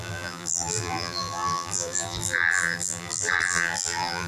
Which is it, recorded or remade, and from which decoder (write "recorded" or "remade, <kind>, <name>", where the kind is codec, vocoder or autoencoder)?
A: remade, vocoder, BigVGAN v2